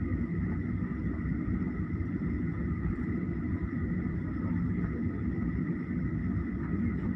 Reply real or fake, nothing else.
real